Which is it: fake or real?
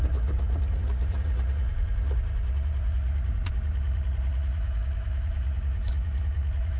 fake